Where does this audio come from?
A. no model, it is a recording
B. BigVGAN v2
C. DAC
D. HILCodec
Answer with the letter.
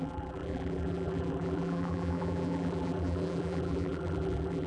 B